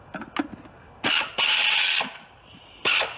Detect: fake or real real